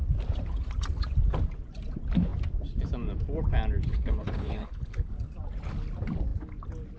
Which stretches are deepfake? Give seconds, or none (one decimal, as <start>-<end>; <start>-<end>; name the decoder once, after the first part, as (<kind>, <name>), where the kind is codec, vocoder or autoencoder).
3.9-5.1 (codec, HILCodec)